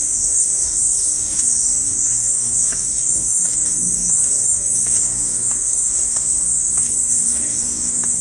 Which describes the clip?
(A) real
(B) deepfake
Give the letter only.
B